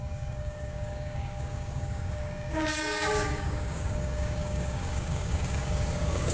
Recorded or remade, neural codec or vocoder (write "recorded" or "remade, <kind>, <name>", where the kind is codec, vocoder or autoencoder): remade, codec, DAC